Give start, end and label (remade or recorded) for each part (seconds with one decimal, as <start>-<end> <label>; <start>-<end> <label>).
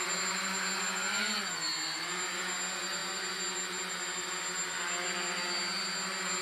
0.0-6.4 recorded